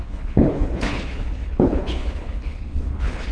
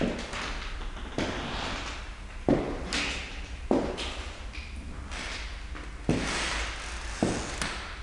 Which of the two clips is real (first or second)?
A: second